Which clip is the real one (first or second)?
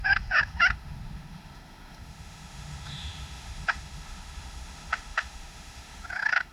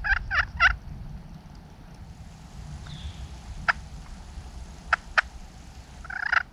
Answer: second